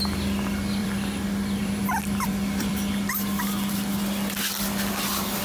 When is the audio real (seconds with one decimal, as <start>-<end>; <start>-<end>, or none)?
0.0-0.8; 2.9-5.4